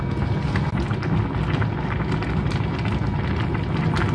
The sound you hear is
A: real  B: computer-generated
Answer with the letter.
A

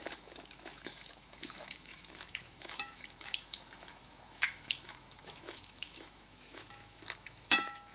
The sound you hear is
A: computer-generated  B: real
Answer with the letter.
A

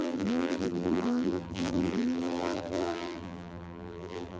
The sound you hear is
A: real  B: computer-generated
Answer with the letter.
B